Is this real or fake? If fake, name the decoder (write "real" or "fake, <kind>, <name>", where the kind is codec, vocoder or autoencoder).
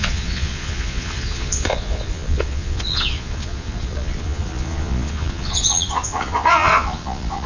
fake, vocoder, Vocos